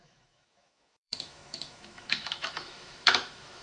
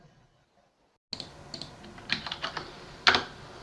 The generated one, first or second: first